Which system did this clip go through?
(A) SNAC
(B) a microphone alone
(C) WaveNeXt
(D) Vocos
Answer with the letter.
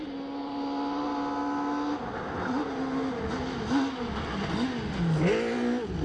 B